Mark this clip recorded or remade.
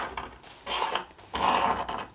recorded